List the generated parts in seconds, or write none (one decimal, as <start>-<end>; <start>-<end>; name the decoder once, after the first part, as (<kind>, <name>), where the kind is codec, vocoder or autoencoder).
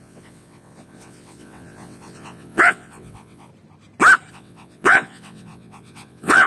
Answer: 0.0-3.5 (vocoder, WaveNeXt); 4.3-6.5